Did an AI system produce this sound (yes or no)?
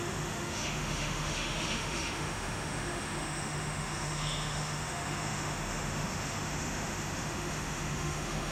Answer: yes